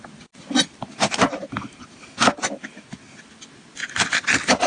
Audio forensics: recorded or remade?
recorded